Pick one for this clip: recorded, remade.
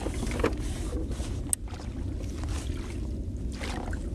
recorded